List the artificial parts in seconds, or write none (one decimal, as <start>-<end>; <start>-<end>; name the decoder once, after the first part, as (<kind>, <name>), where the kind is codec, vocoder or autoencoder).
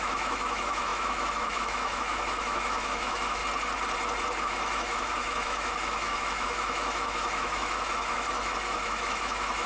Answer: 0.0-3.4 (autoencoder, DAC-VAE); 4.4-9.7